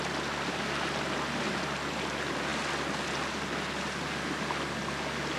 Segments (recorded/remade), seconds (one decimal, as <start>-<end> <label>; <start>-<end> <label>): 0.0-5.4 recorded